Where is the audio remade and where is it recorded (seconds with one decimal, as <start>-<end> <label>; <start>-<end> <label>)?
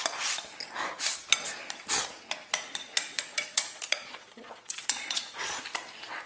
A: 0.0-3.1 recorded; 3.1-5.6 remade; 5.6-6.3 recorded